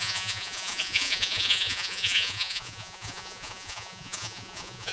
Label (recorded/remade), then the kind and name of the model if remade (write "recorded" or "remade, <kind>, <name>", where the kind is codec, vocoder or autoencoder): remade, vocoder, Vocos